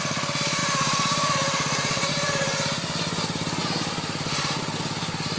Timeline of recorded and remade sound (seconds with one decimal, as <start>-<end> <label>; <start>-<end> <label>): 0.0-0.6 recorded; 0.6-2.1 remade; 2.1-5.4 recorded